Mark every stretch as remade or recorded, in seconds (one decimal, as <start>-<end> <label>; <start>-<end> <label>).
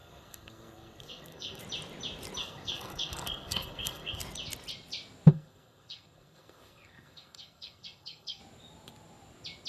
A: 0.0-1.6 remade; 1.6-2.4 recorded; 2.4-4.2 remade; 4.2-5.3 recorded; 5.3-8.4 remade; 8.4-9.7 recorded